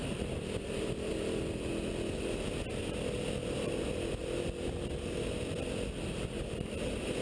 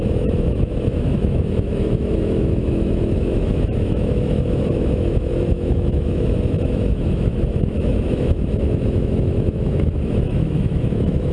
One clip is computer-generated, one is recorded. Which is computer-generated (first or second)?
second